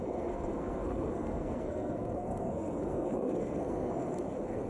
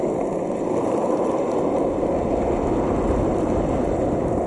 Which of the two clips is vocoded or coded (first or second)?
first